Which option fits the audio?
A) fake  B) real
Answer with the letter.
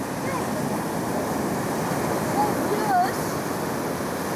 B